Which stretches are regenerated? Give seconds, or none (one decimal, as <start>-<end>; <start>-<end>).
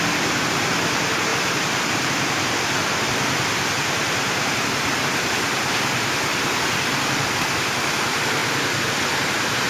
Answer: 1.3-2.1; 6.3-7.2